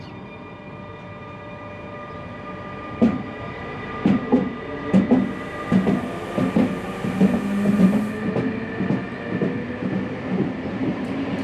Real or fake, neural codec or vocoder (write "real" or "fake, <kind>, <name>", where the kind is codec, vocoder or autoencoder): real